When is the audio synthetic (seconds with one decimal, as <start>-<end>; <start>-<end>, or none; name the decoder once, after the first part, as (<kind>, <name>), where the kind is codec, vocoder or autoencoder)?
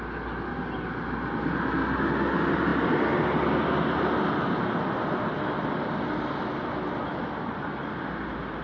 none